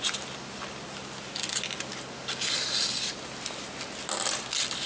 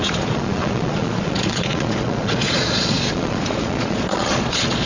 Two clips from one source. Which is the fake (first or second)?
second